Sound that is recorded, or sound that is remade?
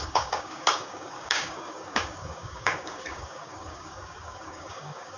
remade